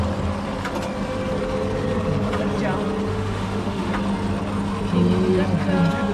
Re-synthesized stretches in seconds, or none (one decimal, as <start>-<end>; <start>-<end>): 3.1-3.9